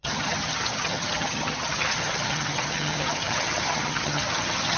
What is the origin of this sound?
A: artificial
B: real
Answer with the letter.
A